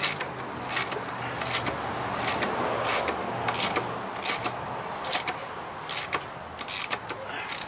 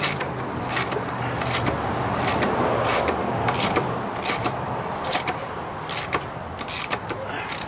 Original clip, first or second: first